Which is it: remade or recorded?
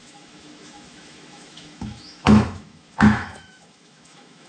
remade